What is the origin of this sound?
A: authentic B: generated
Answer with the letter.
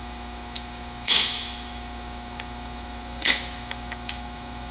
B